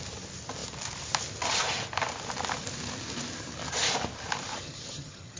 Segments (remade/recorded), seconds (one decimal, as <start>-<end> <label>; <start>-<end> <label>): 0.0-4.5 recorded; 4.5-5.4 remade